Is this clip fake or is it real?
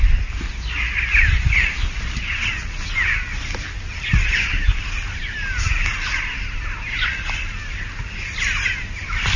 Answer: real